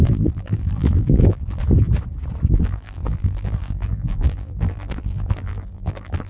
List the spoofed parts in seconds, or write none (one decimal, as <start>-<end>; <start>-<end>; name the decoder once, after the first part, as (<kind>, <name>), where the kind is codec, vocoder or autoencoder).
0.0-1.6 (vocoder, BigVGAN v2); 2.5-6.3